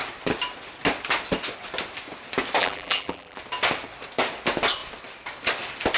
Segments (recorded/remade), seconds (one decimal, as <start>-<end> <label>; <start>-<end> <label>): 0.0-2.6 recorded; 2.6-3.4 remade; 3.4-6.0 recorded